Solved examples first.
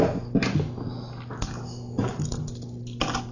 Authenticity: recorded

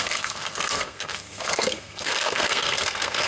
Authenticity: remade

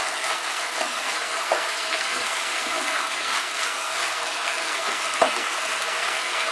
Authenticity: remade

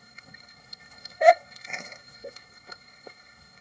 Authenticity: remade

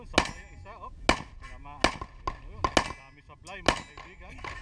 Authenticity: recorded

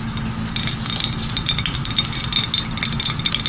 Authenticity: recorded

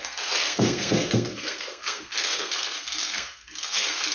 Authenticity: remade